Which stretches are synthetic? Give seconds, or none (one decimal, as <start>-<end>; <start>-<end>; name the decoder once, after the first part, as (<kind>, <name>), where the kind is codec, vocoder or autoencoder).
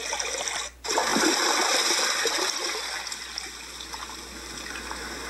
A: none